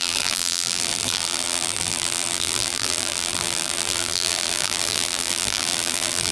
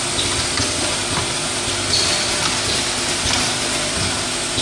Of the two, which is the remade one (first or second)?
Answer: first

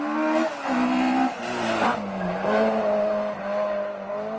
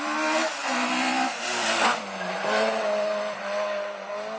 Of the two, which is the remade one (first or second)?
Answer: second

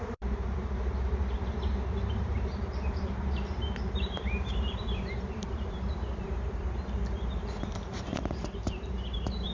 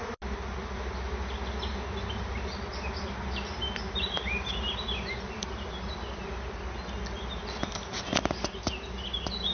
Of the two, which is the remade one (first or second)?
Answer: first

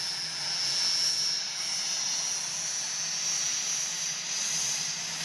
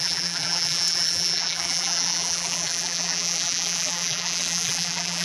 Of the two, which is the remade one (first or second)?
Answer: second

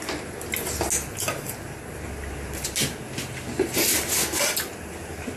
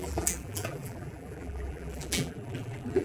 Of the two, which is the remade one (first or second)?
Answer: second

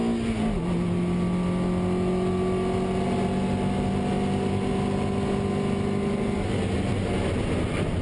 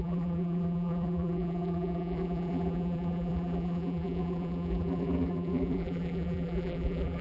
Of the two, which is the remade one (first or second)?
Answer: second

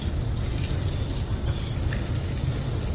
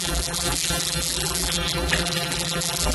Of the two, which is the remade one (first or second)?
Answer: second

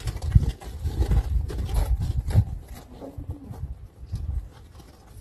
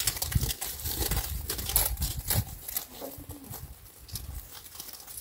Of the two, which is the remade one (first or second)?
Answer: first